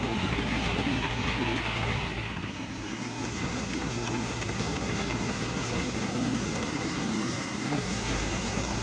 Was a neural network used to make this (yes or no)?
yes